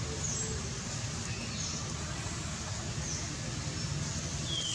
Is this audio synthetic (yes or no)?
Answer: no